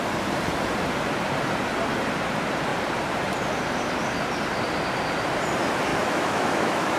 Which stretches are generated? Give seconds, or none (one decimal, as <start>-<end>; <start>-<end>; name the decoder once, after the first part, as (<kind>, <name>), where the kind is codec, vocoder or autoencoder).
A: 5.9-7.0 (autoencoder, DAC-VAE)